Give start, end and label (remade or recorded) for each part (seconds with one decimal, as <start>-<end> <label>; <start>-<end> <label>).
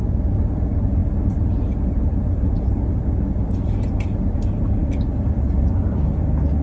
0.0-6.6 recorded